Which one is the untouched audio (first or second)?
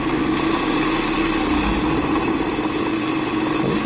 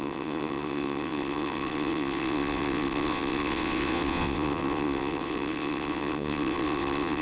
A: first